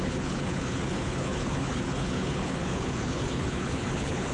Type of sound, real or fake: fake